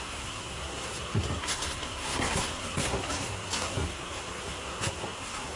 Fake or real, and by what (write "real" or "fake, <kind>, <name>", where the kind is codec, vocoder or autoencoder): fake, codec, SNAC